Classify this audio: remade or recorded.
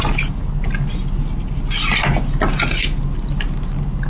recorded